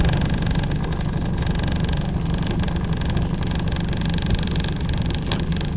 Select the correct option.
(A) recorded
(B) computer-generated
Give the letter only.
A